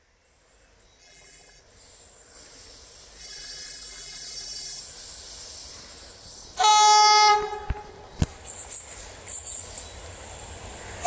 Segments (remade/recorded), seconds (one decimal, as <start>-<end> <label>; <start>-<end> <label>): 0.0-1.0 recorded; 1.0-1.6 remade; 1.6-3.2 recorded; 3.2-4.8 remade; 4.8-11.1 recorded